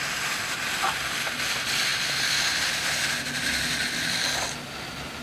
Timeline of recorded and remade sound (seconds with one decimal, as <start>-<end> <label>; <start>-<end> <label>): 0.0-5.2 recorded